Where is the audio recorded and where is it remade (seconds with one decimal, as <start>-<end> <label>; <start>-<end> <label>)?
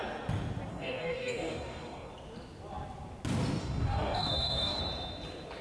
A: 0.0-0.7 recorded; 0.7-2.1 remade; 2.1-3.6 recorded; 3.6-4.8 remade; 4.8-5.6 recorded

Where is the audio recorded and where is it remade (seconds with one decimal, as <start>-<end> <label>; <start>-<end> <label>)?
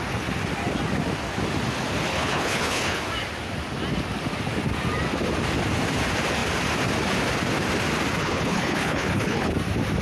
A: 0.0-2.1 recorded; 2.1-3.0 remade; 3.0-8.2 recorded; 8.2-9.5 remade; 9.5-10.0 recorded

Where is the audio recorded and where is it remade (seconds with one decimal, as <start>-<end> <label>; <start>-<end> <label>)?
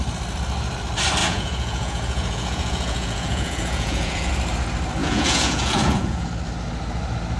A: 0.0-1.2 recorded; 1.2-4.3 remade; 4.3-5.0 recorded; 5.0-6.3 remade; 6.3-7.4 recorded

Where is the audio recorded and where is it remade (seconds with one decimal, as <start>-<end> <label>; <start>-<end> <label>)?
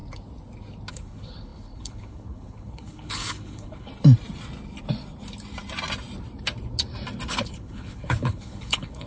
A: 0.0-0.9 recorded; 0.9-3.9 remade; 3.9-7.3 recorded; 7.3-9.1 remade